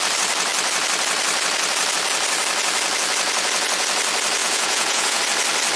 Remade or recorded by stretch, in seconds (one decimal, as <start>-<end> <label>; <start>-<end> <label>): 0.0-4.4 recorded; 4.4-5.2 remade; 5.2-5.8 recorded